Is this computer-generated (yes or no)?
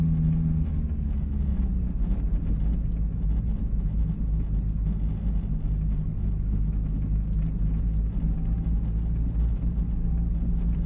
no